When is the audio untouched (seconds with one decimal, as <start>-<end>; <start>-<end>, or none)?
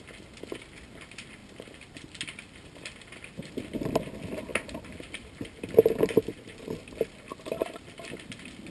0.0-8.7